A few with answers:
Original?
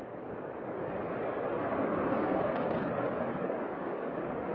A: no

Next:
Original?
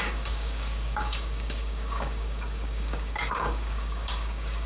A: no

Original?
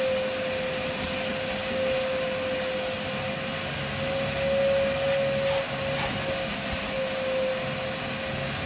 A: yes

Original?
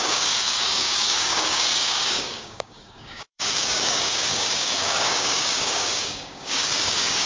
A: no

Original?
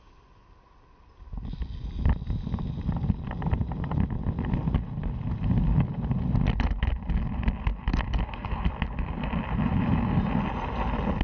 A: yes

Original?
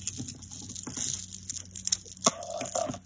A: yes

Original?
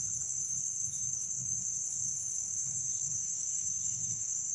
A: no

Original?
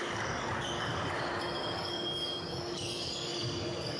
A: no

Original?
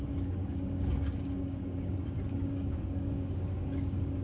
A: no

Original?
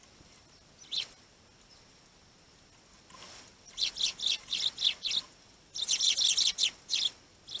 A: yes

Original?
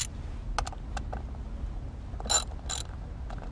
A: yes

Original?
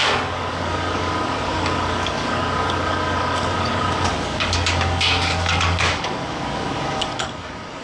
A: no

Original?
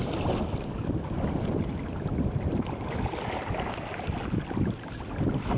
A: yes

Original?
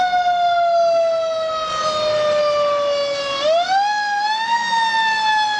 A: yes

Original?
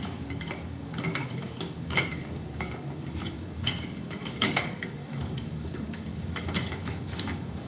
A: no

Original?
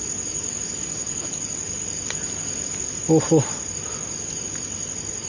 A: yes